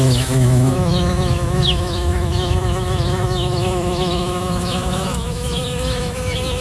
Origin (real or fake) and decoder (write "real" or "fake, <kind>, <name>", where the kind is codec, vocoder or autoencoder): fake, autoencoder, DAC-VAE